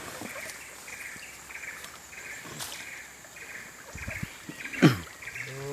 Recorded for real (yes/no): yes